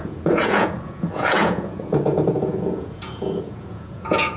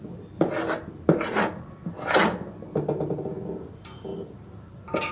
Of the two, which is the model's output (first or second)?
first